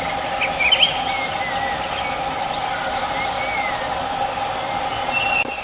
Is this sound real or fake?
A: real